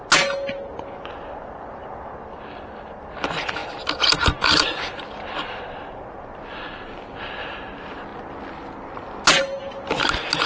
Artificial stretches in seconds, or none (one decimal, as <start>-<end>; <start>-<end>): none